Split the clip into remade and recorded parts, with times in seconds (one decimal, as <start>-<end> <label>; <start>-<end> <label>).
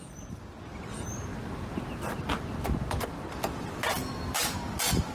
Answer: 0.0-5.1 recorded